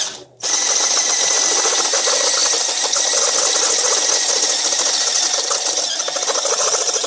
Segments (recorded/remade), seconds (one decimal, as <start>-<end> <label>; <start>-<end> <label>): 0.0-7.1 recorded